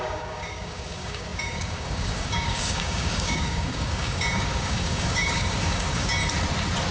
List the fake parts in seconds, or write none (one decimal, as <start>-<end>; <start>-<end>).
0.0-6.2